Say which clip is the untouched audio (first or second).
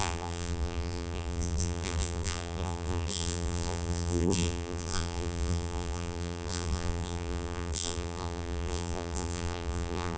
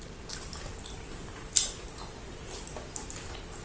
second